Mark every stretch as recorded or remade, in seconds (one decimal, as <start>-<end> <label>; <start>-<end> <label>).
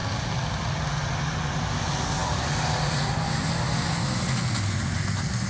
0.0-2.2 recorded; 2.2-3.0 remade; 3.0-5.5 recorded